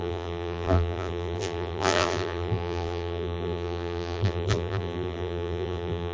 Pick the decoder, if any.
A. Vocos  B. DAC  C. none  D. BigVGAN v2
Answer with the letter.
D